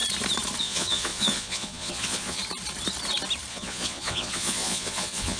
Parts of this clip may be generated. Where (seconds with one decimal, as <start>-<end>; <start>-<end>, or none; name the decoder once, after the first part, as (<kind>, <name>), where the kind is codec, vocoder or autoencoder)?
0.6-2.4 (vocoder, Vocos); 3.5-5.4